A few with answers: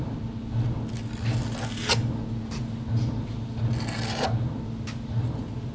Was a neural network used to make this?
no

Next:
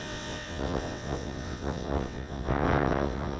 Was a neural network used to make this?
yes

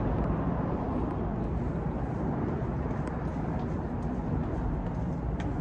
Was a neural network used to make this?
no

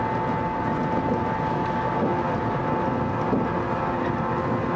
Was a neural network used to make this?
no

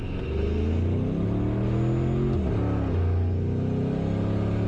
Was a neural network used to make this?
no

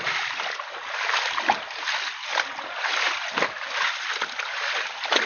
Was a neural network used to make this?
no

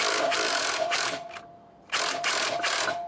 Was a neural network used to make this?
no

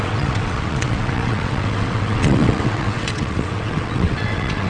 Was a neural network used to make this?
yes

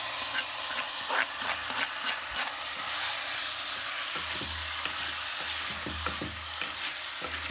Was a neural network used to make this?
no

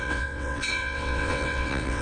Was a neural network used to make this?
yes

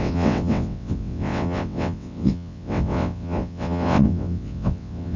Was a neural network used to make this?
yes